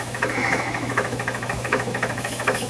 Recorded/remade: remade